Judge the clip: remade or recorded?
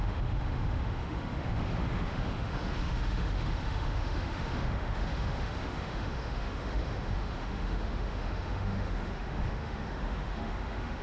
remade